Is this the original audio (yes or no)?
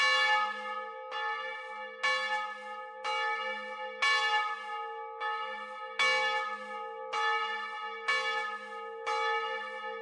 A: yes